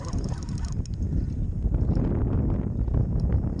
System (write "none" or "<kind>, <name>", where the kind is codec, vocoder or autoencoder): none